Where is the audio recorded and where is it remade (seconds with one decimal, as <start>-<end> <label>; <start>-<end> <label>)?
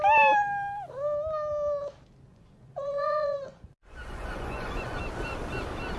0.0-2.3 recorded; 2.3-5.0 remade; 5.0-6.0 recorded